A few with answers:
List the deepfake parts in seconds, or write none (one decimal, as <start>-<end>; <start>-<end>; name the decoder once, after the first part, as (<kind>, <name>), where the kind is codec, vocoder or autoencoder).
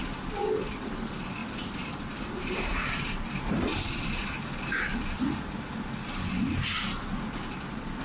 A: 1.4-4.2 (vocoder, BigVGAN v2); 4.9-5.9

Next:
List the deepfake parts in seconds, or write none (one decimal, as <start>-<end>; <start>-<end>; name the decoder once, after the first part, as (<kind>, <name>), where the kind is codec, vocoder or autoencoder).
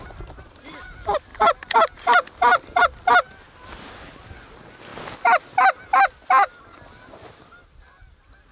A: 1.3-2.8 (vocoder, BigVGAN v2)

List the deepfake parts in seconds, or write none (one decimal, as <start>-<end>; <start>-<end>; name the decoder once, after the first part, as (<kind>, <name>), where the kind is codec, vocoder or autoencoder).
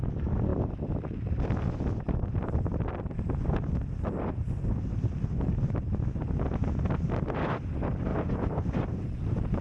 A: 8.1-9.6 (vocoder, BigVGAN v2)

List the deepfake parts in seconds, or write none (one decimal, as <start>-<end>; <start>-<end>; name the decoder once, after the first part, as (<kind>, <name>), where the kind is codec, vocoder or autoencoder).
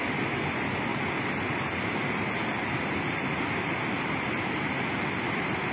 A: none